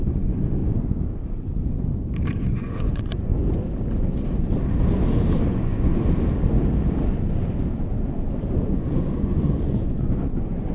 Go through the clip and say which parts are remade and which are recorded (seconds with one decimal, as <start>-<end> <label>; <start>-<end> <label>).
0.0-0.6 remade; 0.6-2.4 recorded; 2.4-3.3 remade; 3.3-5.5 recorded; 5.5-5.9 remade; 5.9-8.5 recorded; 8.5-10.7 remade